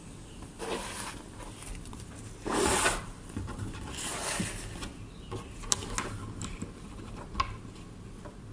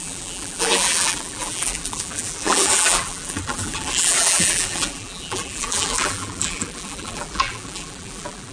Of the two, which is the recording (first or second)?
first